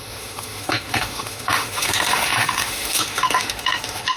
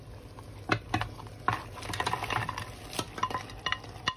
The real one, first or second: second